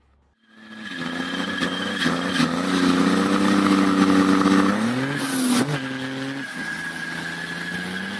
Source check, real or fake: real